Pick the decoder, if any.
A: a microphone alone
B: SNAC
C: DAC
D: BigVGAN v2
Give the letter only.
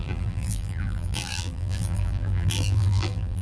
D